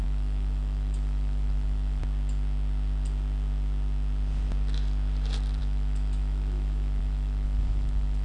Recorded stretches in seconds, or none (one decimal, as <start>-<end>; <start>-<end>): 2.0-5.6